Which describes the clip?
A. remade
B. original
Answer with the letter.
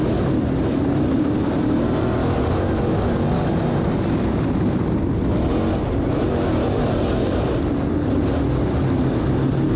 B